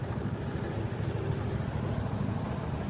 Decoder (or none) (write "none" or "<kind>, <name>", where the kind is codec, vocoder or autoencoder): vocoder, BigVGAN v2